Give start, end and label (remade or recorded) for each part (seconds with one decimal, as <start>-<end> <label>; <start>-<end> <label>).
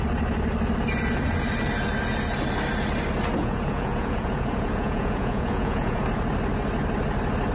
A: 0.0-3.4 recorded; 3.4-6.0 remade; 6.0-7.5 recorded